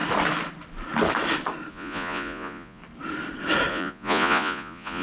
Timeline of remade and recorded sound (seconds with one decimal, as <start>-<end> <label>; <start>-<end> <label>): 0.0-1.7 recorded; 1.7-2.8 remade; 2.8-3.7 recorded; 3.7-5.0 remade